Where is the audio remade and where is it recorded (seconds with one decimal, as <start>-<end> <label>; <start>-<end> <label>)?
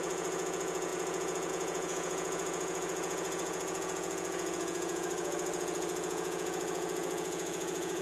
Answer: 0.0-8.0 remade